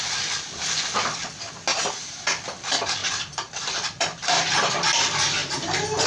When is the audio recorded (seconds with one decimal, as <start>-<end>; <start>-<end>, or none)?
0.0-1.7; 2.2-3.0; 4.5-5.4